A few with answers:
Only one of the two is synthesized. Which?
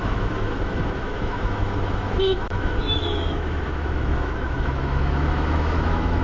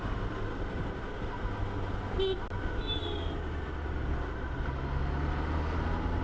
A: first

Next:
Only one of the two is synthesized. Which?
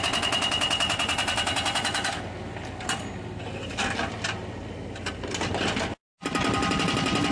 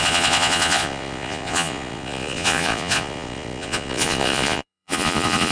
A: second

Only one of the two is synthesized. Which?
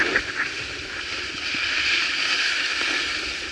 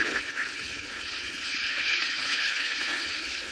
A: second